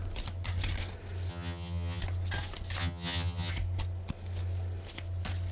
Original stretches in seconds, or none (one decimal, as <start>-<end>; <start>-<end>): 0.0-1.3; 2.0-2.8; 3.5-5.5